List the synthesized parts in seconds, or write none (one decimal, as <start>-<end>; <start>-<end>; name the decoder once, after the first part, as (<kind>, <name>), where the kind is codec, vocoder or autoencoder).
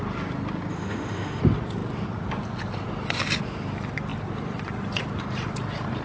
0.7-1.4 (autoencoder, DAC-VAE)